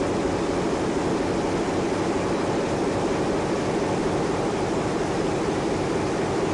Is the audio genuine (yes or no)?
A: yes